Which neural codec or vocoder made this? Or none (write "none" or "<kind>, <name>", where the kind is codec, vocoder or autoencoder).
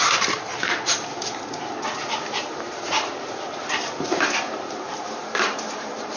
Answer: vocoder, BigVGAN v2